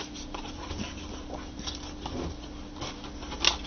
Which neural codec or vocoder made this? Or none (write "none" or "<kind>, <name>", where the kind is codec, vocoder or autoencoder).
none